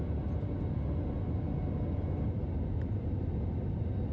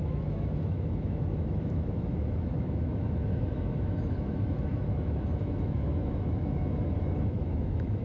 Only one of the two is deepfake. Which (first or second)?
second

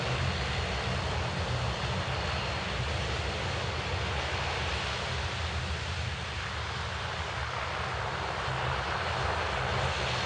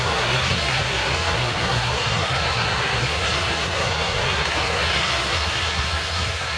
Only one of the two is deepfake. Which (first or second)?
second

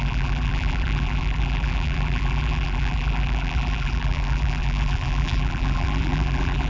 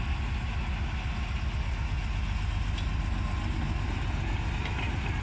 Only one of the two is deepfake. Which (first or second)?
first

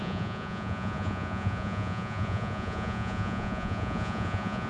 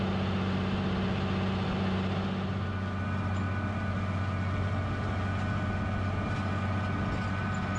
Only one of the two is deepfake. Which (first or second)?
first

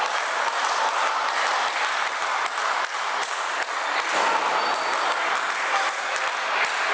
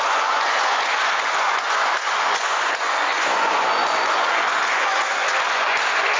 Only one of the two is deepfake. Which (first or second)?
second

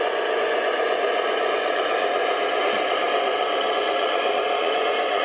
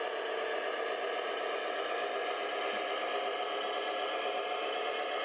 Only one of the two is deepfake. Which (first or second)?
first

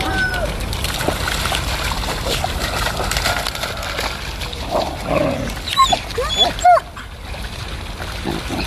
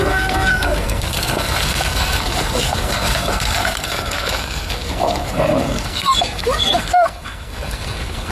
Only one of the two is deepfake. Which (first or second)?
second